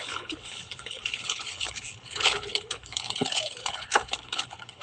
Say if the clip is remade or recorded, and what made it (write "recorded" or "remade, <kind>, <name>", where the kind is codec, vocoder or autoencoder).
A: remade, codec, HILCodec